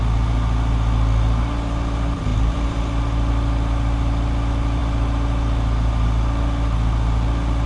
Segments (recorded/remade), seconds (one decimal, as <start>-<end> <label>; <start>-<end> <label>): 0.0-7.7 recorded